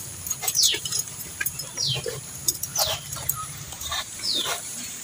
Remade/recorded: remade